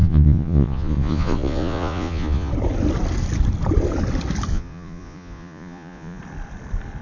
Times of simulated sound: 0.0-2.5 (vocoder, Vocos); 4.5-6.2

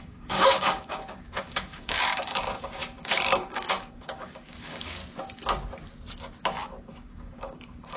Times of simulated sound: 0.0-5.0 (codec, DAC); 6.9-8.0

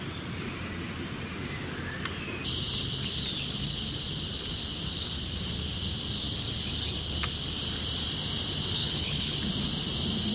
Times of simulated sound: 8.8-9.4 (codec, HILCodec)

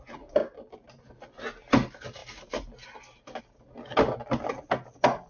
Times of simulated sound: none

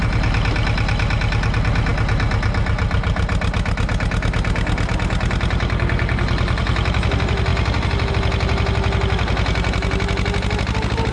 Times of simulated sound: none

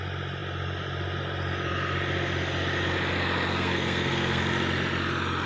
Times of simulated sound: 3.5-4.4 (codec, SNAC)